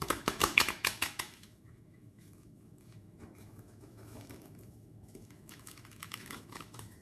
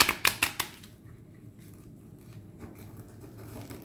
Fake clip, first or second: first